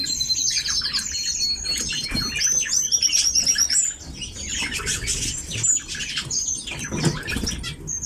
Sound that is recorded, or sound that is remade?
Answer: recorded